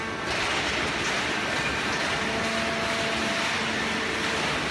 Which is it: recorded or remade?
recorded